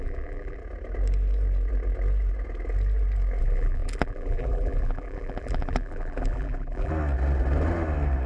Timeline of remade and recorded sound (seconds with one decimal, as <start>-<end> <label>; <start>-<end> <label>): 0.0-0.6 remade; 0.6-3.4 recorded; 3.4-6.9 remade; 6.9-8.3 recorded